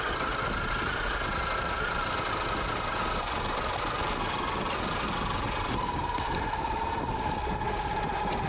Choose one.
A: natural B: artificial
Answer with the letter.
A